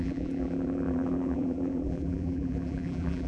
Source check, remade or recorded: remade